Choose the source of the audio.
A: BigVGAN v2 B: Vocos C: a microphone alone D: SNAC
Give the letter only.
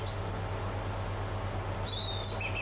C